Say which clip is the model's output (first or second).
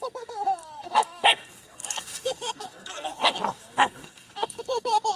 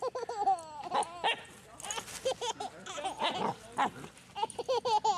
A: first